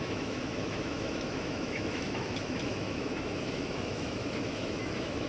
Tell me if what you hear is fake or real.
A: fake